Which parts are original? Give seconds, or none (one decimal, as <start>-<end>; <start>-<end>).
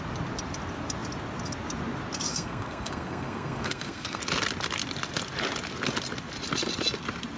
0.0-2.3; 4.2-7.4